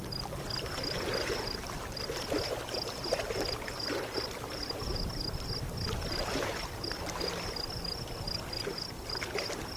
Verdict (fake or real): real